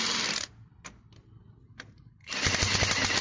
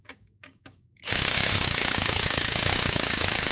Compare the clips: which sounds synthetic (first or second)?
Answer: second